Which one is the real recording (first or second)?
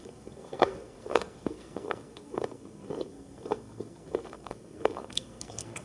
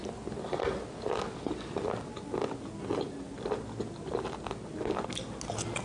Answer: second